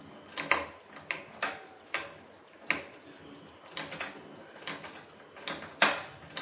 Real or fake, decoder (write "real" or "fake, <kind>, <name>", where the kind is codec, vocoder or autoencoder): real